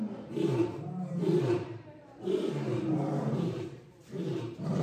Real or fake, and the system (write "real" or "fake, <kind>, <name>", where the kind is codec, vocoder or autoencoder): fake, vocoder, BigVGAN v2